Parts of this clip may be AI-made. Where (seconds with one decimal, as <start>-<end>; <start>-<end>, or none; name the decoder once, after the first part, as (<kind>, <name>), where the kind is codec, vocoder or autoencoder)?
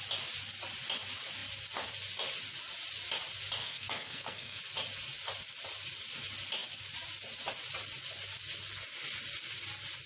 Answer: 3.6-4.6 (codec, SNAC)